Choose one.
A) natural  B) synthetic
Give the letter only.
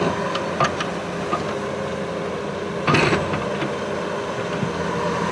A